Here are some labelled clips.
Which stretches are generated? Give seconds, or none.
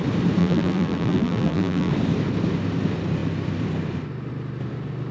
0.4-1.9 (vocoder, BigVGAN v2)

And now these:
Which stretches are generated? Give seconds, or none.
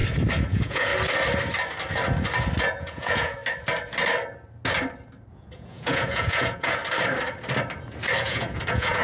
0.5-0.9 (vocoder, Vocos); 2.6-3.4; 5.3-6.8; 8.2-9.0